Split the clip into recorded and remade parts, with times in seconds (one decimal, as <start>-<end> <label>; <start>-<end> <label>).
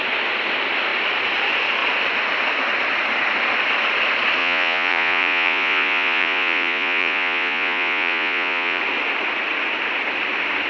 0.0-4.4 recorded; 4.4-8.8 remade; 8.8-10.7 recorded